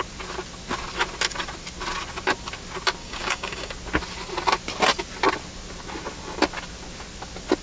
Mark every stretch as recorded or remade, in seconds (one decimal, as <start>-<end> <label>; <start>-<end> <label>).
0.0-3.0 recorded; 3.0-3.7 remade; 3.7-7.6 recorded

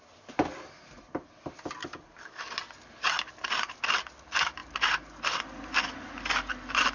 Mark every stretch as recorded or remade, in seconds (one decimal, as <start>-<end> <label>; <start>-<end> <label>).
0.0-1.8 recorded; 1.8-2.4 remade; 2.4-6.9 recorded